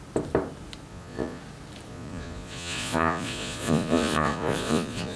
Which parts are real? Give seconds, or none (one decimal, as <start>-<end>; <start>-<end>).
0.0-0.9; 1.4-1.9